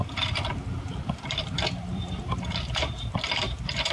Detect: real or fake fake